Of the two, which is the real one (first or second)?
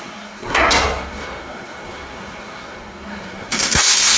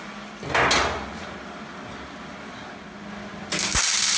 second